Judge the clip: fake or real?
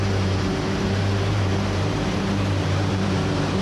fake